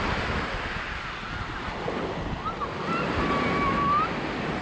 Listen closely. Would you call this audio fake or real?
real